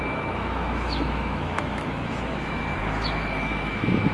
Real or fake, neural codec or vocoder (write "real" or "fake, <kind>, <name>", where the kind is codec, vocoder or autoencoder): fake, autoencoder, DAC-VAE